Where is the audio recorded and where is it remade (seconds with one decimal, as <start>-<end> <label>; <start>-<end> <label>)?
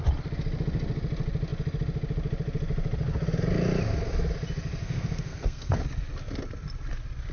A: 0.0-4.8 recorded; 4.8-5.8 remade; 5.8-7.3 recorded